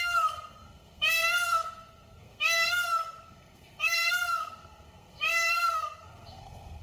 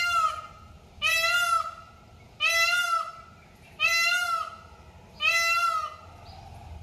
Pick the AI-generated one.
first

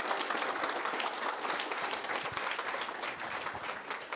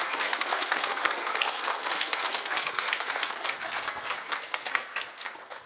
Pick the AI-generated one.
second